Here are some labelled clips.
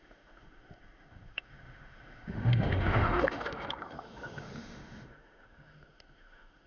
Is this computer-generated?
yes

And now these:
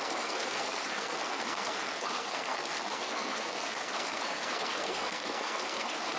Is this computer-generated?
yes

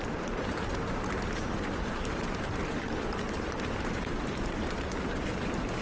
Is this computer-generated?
yes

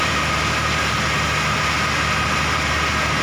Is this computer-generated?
no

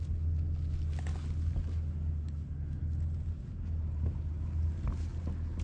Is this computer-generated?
no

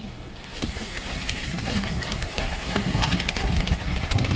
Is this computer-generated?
yes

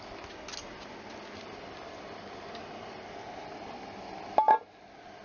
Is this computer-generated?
no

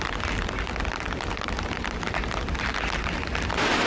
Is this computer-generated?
no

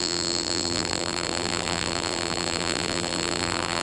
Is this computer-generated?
yes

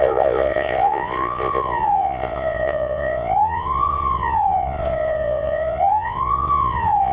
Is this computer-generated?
yes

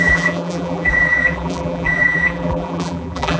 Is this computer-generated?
yes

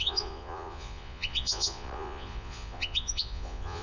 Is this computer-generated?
yes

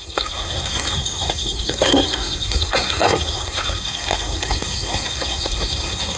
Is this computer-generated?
yes